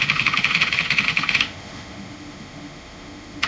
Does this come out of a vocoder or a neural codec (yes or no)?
yes